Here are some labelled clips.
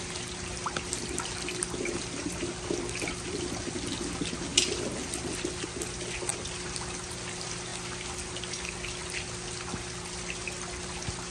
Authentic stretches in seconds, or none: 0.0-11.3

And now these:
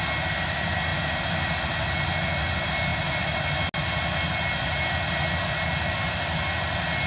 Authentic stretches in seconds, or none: 0.0-7.1

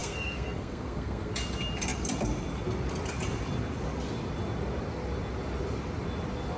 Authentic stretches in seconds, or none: 1.3-6.6

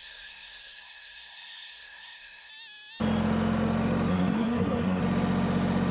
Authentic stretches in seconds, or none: 2.5-4.1; 5.0-5.9